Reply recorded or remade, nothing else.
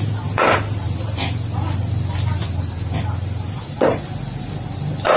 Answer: recorded